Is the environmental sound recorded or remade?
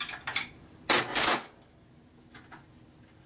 recorded